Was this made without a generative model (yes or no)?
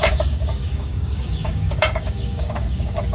no